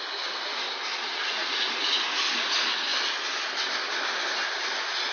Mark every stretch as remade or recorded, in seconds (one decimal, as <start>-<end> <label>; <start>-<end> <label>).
0.0-0.9 recorded; 0.9-1.7 remade; 1.7-5.1 recorded